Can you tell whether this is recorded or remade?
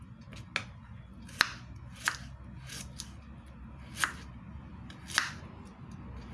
recorded